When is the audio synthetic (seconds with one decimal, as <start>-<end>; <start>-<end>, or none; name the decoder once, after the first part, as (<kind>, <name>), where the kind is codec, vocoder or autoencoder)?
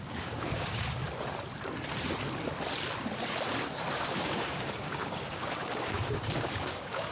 0.0-1.0 (codec, DAC); 3.9-7.1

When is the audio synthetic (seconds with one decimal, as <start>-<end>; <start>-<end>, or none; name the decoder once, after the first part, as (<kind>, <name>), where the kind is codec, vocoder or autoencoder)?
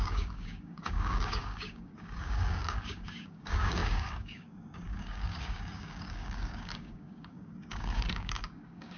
0.0-9.0 (codec, DAC)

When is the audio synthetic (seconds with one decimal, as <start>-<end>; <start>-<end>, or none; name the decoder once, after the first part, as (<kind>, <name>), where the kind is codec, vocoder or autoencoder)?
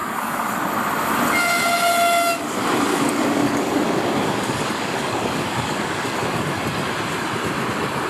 0.0-0.5 (codec, DAC); 2.9-6.6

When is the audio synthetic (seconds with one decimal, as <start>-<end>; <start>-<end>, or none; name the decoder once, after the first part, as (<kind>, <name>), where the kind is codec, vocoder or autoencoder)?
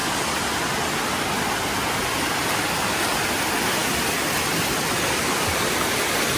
none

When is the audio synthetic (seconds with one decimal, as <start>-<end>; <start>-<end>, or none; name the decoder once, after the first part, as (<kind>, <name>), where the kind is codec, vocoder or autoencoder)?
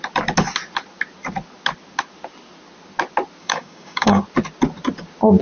3.4-4.2 (codec, DAC)